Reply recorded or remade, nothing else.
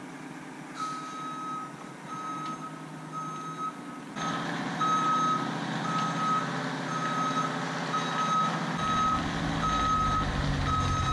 recorded